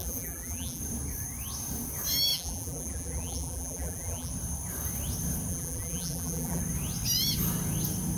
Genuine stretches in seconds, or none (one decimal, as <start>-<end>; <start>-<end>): 0.8-2.3; 4.3-5.5; 6.6-8.2